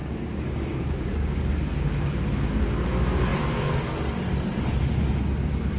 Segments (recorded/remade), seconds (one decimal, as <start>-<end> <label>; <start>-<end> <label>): 0.0-1.5 remade; 1.5-5.8 recorded